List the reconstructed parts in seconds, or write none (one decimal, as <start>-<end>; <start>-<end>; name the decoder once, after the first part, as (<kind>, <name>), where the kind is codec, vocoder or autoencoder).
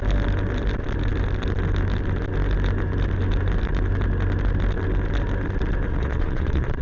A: 5.9-6.8 (vocoder, Vocos)